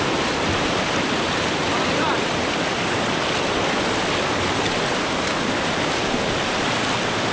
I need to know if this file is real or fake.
real